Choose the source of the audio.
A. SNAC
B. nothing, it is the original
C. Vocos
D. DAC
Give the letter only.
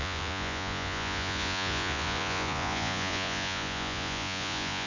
C